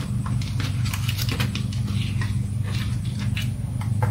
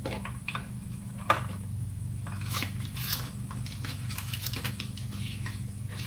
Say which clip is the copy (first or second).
second